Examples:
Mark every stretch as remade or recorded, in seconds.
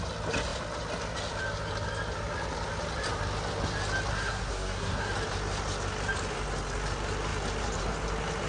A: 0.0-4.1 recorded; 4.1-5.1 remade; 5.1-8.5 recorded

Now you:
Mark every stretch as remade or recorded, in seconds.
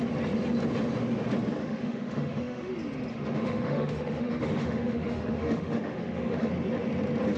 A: 0.0-1.6 recorded; 1.6-2.7 remade; 2.7-3.1 recorded; 3.1-6.5 remade; 6.5-7.4 recorded